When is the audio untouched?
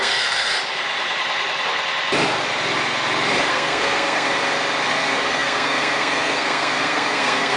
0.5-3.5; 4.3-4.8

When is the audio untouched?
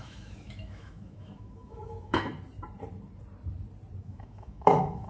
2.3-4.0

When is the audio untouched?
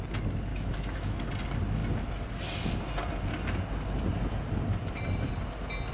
0.0-0.5; 1.2-5.9